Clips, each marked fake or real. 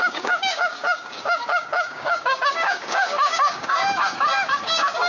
fake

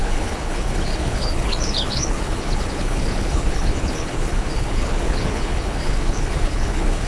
fake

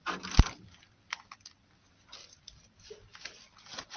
real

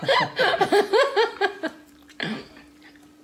fake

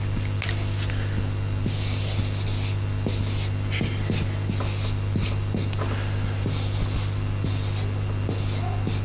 real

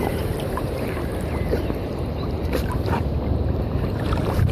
fake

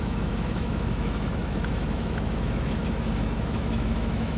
fake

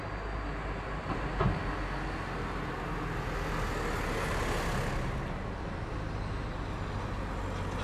real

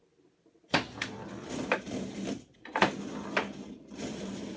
real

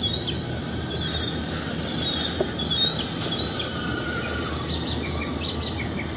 real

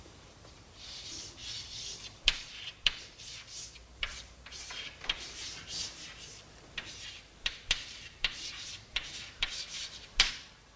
fake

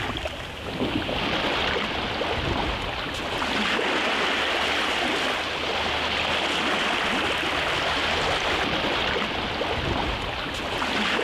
real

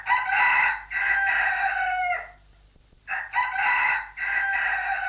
real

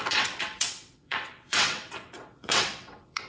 fake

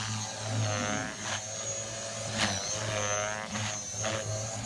real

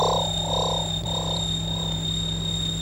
real